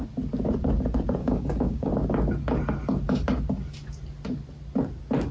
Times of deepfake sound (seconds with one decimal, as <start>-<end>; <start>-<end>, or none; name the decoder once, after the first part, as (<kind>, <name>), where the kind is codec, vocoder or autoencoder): 1.2-1.9 (codec, DAC)